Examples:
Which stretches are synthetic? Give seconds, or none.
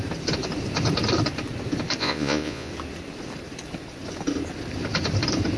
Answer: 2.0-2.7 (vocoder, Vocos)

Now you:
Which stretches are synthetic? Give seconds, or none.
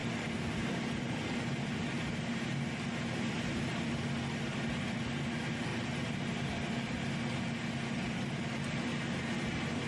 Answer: 0.0-1.2 (vocoder, BigVGAN v2); 5.7-6.7